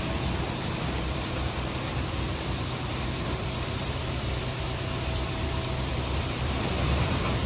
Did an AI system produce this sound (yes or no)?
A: yes